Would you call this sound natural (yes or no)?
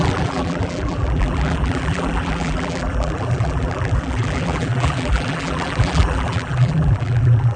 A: no